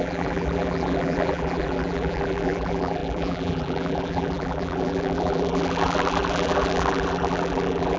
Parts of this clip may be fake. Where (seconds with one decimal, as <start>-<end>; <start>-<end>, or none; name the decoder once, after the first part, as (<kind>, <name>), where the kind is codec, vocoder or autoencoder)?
0.0-8.0 (vocoder, BigVGAN v2)